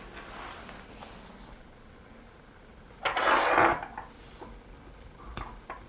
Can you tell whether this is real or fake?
real